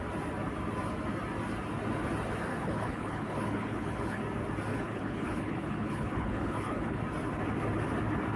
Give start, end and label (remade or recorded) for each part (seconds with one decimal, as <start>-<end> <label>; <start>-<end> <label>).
0.0-2.5 recorded; 2.5-4.2 remade; 4.2-4.7 recorded; 4.7-7.0 remade; 7.0-8.4 recorded